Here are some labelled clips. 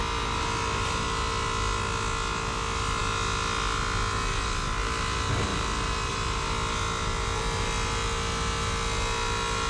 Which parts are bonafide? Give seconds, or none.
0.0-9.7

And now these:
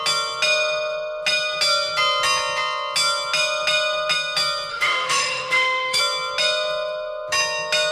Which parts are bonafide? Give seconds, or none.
0.0-4.7; 6.0-7.9

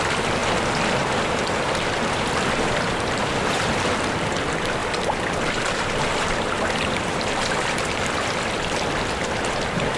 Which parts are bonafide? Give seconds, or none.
0.0-10.0

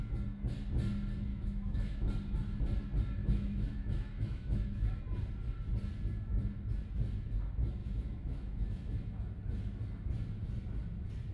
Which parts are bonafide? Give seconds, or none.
0.0-1.3; 2.1-3.2; 5.0-7.8; 9.2-11.3